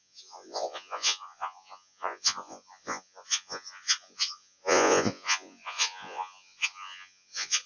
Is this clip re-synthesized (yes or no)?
yes